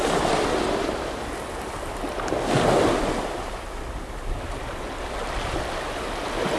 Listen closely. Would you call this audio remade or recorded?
recorded